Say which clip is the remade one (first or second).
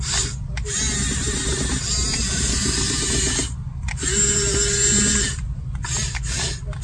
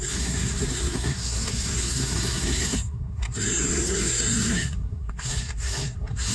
second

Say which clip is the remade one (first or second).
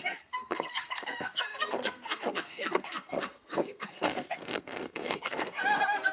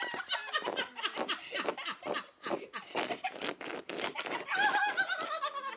first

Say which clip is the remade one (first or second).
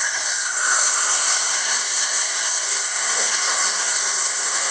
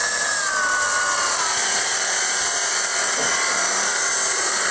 first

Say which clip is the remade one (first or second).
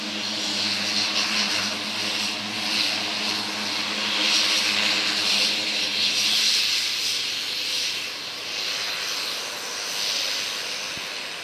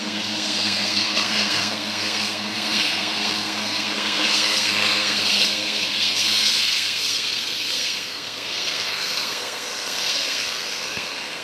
second